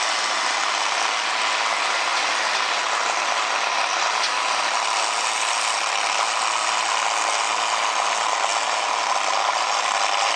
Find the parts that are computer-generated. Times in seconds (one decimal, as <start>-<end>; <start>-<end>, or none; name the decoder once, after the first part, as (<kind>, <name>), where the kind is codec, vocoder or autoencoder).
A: none